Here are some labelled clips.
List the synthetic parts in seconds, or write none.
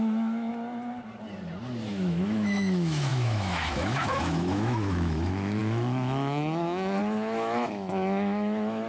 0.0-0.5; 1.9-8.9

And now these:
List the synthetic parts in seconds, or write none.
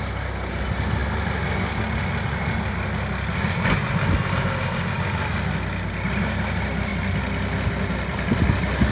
none